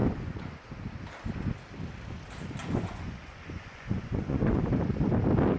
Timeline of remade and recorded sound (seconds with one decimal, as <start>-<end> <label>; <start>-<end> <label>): 0.0-0.6 remade; 0.6-2.6 recorded; 2.6-4.6 remade; 4.6-5.6 recorded